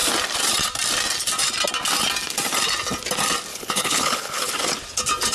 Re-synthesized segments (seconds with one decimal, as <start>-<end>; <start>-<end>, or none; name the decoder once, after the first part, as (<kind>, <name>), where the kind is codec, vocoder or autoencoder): 3.5-4.5 (codec, HILCodec)